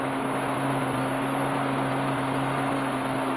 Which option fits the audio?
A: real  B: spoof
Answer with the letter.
A